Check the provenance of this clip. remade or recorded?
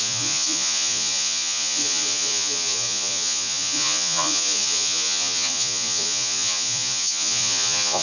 remade